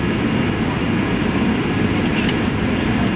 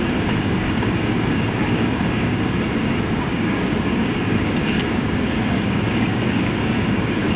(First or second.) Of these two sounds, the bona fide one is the first